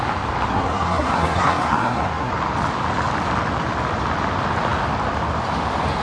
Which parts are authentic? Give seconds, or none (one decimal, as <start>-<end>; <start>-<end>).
0.0-0.5; 2.3-6.0